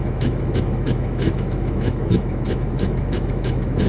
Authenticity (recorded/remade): remade